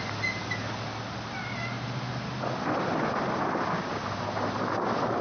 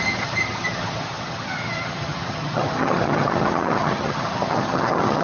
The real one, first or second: first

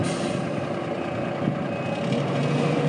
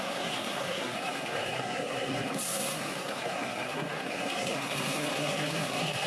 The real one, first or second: first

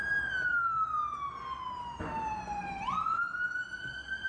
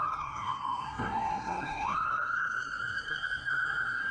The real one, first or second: first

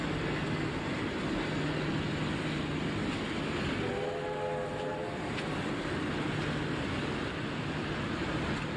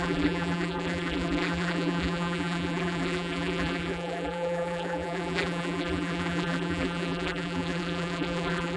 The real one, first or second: first